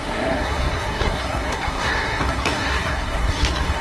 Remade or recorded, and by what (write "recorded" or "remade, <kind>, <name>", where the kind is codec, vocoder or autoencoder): remade, codec, SNAC